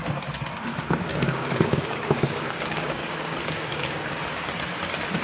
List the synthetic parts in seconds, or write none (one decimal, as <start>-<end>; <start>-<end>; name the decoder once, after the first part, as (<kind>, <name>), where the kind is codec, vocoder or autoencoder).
1.1-4.2 (codec, DAC)